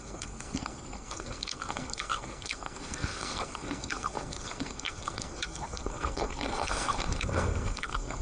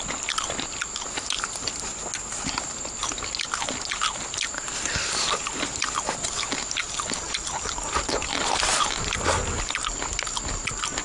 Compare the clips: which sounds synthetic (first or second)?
first